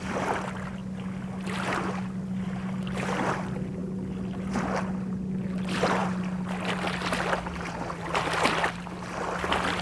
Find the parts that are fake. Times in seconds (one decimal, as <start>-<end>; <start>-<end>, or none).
none